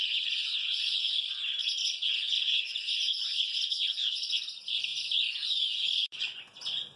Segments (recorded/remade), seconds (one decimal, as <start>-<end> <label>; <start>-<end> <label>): 0.0-7.0 remade